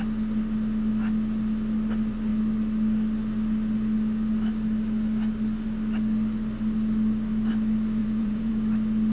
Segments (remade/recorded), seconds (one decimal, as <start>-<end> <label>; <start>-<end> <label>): 0.0-8.0 recorded; 8.0-8.5 remade; 8.5-9.1 recorded